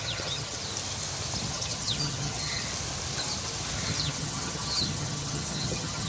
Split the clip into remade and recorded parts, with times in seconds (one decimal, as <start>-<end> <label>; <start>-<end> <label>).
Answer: 0.0-0.6 remade; 0.6-1.5 recorded; 1.5-2.6 remade; 2.6-4.0 recorded; 4.0-6.1 remade